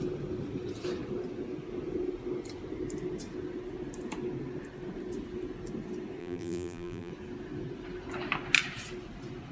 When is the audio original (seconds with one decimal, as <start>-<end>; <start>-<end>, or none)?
0.0-6.2; 7.1-9.5